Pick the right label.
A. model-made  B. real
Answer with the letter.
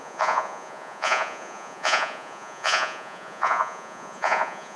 A